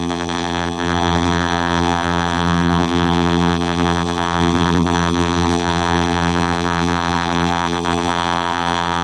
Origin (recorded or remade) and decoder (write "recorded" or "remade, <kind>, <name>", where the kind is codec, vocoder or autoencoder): remade, vocoder, BigVGAN v2